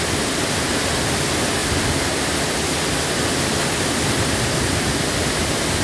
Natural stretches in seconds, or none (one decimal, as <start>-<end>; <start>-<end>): 0.0-5.8